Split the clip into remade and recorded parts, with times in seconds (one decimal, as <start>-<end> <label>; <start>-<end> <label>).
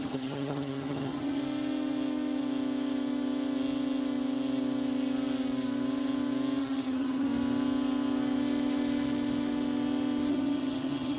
0.0-1.4 remade; 1.4-6.6 recorded; 6.6-7.3 remade; 7.3-10.3 recorded; 10.3-11.2 remade